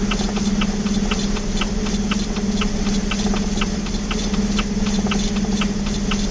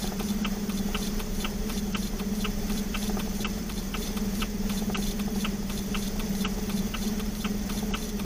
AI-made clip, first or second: second